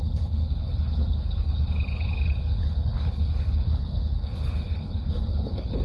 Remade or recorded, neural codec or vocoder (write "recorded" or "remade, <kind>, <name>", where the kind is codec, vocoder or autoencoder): remade, codec, HILCodec